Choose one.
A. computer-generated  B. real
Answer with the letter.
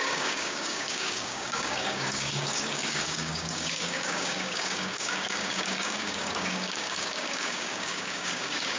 A